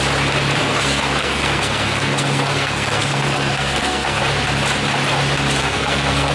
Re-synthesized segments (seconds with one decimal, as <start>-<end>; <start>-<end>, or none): 0.6-4.2; 5.6-6.3